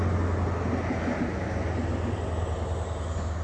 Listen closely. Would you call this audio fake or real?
real